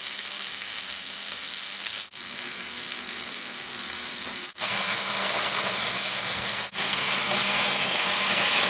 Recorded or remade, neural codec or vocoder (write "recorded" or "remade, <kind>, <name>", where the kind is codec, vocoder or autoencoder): remade, codec, SNAC